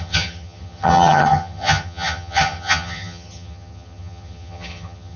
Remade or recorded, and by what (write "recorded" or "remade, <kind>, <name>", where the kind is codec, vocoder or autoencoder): remade, vocoder, HiFi-GAN